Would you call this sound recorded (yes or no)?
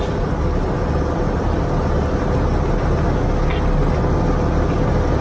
yes